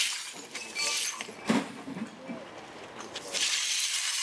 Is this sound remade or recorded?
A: recorded